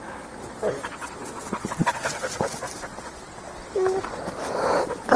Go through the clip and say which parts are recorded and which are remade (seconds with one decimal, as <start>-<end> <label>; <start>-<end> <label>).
0.0-5.2 recorded